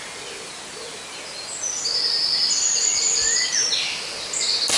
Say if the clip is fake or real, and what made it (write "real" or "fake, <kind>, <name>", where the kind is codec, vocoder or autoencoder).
real